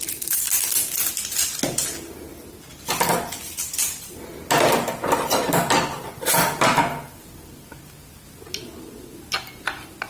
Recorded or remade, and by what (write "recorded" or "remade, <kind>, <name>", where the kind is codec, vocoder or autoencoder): recorded